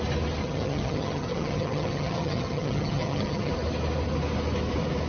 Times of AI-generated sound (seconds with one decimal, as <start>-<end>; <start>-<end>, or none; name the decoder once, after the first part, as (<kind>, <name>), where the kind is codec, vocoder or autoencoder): 0.4-3.5 (vocoder, HiFi-GAN)